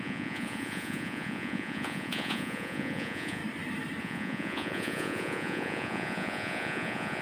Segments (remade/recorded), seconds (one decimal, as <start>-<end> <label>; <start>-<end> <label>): 0.0-3.4 remade; 3.4-4.0 recorded; 4.0-7.2 remade